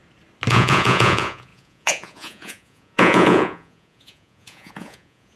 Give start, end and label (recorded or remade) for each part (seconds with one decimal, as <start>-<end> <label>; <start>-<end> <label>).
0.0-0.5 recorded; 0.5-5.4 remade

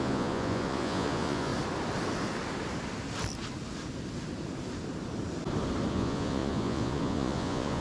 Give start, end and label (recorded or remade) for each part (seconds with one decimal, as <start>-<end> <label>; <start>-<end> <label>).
0.0-1.5 remade; 1.5-5.9 recorded; 5.9-7.8 remade

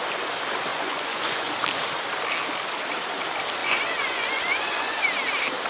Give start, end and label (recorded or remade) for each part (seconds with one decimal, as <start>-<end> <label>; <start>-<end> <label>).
0.0-0.7 recorded; 0.7-1.5 remade; 1.5-3.6 recorded; 3.6-5.0 remade; 5.0-5.7 recorded

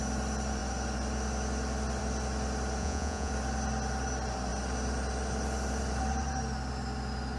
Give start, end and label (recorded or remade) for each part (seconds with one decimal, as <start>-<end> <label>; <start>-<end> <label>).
0.0-2.8 recorded; 2.8-3.3 remade; 3.3-7.4 recorded

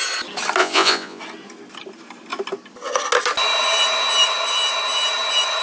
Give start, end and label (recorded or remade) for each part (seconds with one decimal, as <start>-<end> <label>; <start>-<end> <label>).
0.0-0.6 recorded; 0.6-1.2 remade; 1.2-5.6 recorded

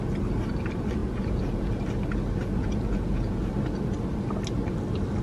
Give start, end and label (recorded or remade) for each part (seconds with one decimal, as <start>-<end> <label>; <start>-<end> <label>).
0.0-1.0 recorded; 1.0-1.8 remade; 1.8-2.6 recorded; 2.6-3.5 remade; 3.5-5.2 recorded

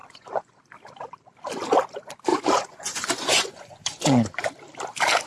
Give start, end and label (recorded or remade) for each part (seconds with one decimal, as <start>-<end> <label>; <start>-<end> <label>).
0.0-0.6 remade; 0.6-2.3 recorded; 2.3-4.5 remade; 4.5-5.3 recorded